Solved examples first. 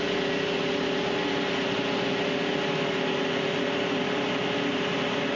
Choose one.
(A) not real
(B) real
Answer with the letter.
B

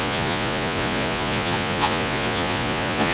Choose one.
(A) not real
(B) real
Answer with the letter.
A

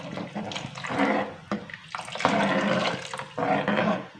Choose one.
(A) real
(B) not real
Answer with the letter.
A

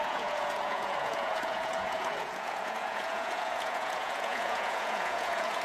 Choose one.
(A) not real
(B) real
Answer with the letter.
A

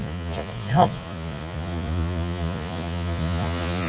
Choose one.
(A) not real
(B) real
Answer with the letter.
A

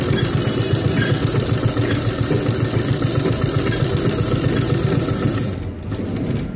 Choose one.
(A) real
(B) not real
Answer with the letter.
A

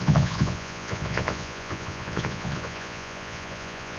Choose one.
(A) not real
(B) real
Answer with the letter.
A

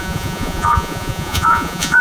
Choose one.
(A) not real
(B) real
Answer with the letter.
A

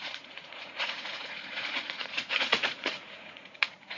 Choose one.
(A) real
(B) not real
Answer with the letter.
B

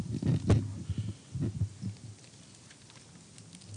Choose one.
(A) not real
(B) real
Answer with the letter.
B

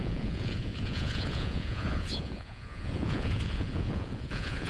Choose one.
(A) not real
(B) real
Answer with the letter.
A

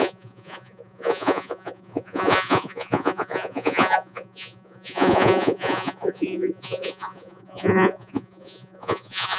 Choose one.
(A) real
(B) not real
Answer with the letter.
B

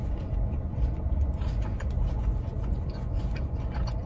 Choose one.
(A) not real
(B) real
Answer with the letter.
A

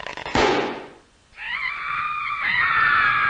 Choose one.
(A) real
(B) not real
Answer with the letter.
B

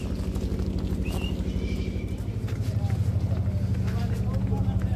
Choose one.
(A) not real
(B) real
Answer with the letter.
B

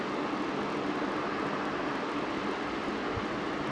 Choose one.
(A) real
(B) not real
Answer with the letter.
A